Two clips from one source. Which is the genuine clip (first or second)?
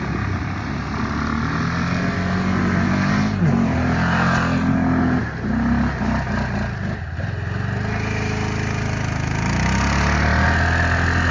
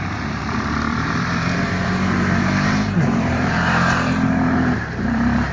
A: first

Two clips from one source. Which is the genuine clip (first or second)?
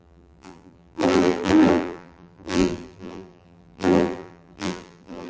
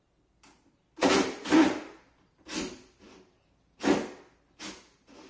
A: second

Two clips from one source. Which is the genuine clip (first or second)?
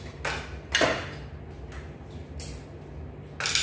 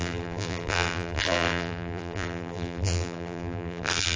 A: first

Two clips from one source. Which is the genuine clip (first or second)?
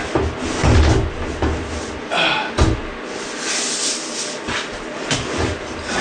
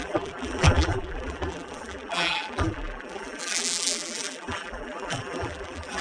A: first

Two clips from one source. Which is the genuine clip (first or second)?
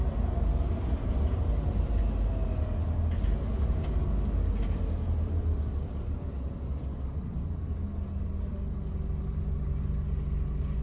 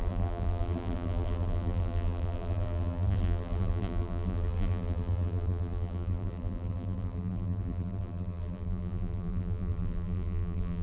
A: first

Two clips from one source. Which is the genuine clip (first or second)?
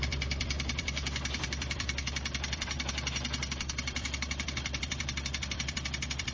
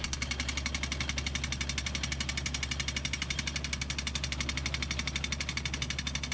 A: second